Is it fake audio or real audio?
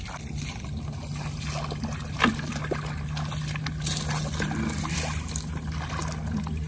real